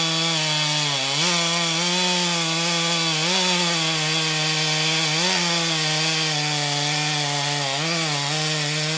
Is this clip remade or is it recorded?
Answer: recorded